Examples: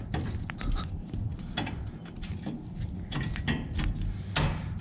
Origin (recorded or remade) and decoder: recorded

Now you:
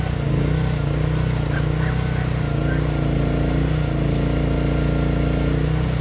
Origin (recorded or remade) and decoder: recorded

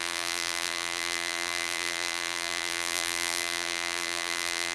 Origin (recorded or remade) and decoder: remade, vocoder, BigVGAN v2